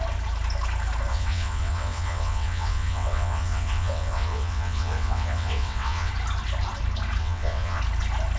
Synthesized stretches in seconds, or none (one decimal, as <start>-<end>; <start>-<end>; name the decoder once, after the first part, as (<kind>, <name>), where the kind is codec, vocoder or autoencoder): 1.1-6.1 (vocoder, WaveNeXt); 7.2-7.8